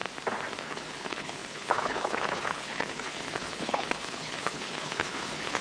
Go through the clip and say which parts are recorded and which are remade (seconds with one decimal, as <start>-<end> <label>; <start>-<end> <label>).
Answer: 0.0-0.6 recorded; 0.6-5.6 remade